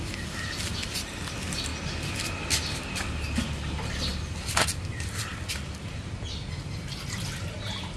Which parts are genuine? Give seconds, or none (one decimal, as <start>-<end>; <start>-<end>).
0.0-8.0